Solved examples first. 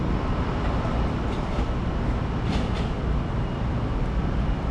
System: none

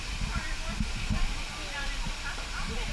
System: none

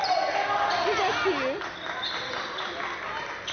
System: none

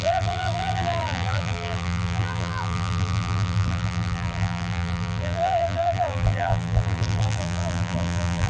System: vocoder, BigVGAN v2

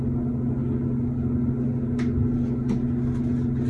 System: none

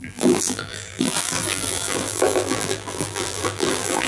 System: vocoder, BigVGAN v2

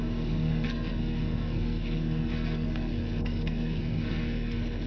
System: codec, SNAC